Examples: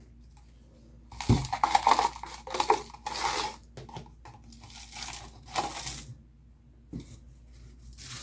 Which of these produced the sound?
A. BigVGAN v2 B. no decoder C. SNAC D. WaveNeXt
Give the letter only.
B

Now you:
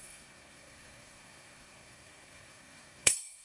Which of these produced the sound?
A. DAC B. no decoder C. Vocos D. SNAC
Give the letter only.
D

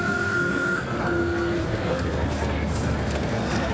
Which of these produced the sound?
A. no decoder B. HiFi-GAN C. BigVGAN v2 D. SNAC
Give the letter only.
D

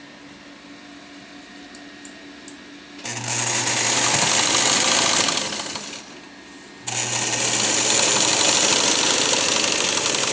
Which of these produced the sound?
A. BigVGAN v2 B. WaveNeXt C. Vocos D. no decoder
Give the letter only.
D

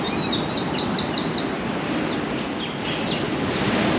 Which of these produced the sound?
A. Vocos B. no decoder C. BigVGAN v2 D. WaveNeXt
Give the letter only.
B